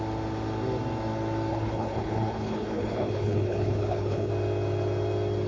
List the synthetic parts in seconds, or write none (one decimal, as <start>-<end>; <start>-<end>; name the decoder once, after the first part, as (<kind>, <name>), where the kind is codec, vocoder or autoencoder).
1.5-4.3 (codec, HILCodec)